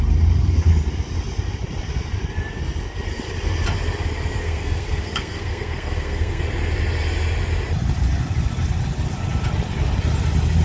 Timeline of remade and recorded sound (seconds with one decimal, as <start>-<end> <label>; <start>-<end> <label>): 0.0-4.4 recorded; 4.4-6.4 remade; 6.4-10.6 recorded